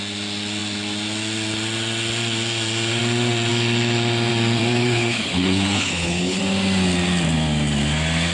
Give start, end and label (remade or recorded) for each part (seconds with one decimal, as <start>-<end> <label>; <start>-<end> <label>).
0.0-4.8 recorded; 4.8-6.4 remade; 6.4-8.3 recorded